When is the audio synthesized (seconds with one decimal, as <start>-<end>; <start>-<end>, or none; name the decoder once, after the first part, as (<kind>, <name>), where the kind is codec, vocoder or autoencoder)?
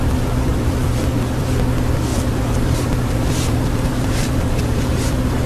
0.5-1.0 (vocoder, BigVGAN v2); 2.1-5.0